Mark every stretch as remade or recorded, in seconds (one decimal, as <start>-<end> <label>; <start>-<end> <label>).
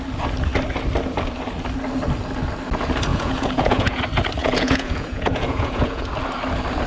0.0-3.1 recorded; 3.1-4.0 remade; 4.0-4.4 recorded; 4.4-6.1 remade; 6.1-6.9 recorded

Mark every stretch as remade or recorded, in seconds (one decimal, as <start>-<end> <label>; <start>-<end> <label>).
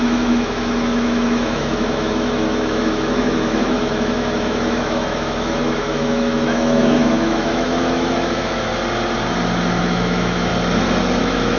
0.0-8.7 remade; 8.7-9.8 recorded; 9.8-10.5 remade; 10.5-11.2 recorded; 11.2-11.6 remade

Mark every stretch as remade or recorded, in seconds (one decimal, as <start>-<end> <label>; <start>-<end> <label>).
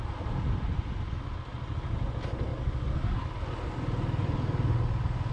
0.0-5.3 recorded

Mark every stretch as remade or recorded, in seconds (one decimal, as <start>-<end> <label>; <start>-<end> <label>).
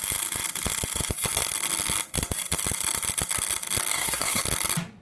0.0-3.9 recorded; 3.9-4.4 remade; 4.4-5.0 recorded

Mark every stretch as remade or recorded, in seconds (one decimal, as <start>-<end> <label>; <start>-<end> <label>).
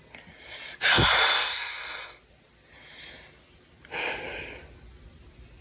0.0-1.2 recorded; 1.2-2.2 remade; 2.2-5.6 recorded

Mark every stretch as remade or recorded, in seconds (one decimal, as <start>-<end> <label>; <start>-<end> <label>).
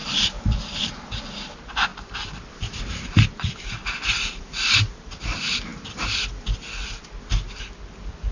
0.0-0.8 remade; 0.8-1.9 recorded; 1.9-4.4 remade; 4.4-8.3 recorded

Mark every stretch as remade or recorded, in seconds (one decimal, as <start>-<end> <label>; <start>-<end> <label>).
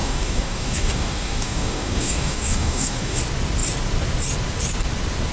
0.0-3.2 remade; 3.2-5.3 recorded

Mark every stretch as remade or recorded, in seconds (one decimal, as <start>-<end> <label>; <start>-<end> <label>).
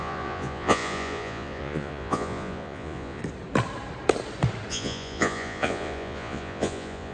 0.0-3.2 remade; 3.2-4.7 recorded; 4.7-7.1 remade